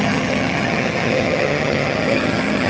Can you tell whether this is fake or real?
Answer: fake